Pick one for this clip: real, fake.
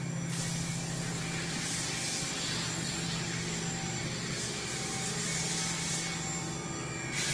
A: real